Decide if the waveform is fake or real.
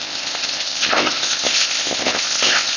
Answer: fake